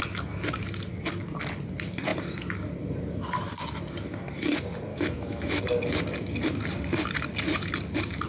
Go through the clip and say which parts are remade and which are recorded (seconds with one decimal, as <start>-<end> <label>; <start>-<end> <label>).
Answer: 0.0-4.9 recorded; 4.9-5.6 remade; 5.6-8.3 recorded